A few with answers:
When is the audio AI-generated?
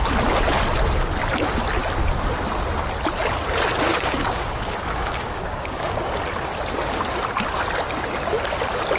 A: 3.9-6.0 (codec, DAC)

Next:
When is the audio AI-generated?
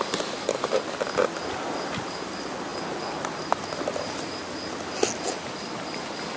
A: none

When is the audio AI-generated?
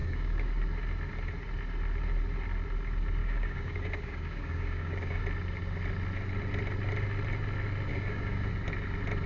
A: 0.0-0.5 (codec, DAC); 3.2-5.2; 7.9-8.5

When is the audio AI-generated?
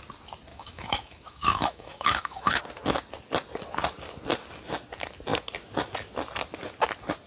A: 0.5-2.6 (autoencoder, DAC-VAE)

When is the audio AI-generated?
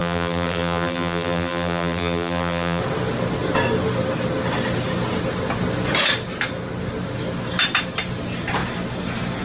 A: 0.0-2.8 (vocoder, BigVGAN v2)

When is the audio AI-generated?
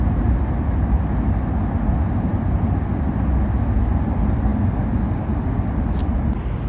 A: none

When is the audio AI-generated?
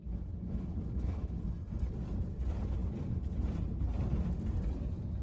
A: 0.0-1.9 (autoencoder, DAC-VAE)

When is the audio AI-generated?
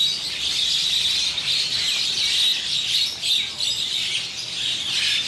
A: none